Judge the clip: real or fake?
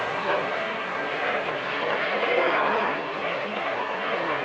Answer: fake